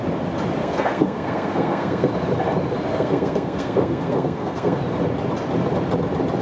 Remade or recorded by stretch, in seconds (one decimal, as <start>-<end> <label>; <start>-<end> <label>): 0.0-0.6 recorded; 0.6-2.1 remade; 2.1-2.9 recorded; 2.9-4.8 remade; 4.8-6.4 recorded